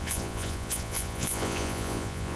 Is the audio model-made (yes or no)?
yes